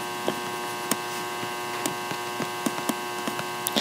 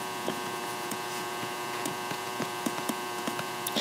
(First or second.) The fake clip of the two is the second